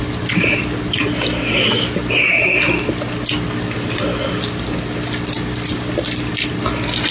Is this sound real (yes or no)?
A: yes